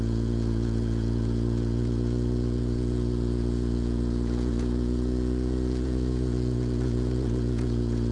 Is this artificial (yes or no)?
yes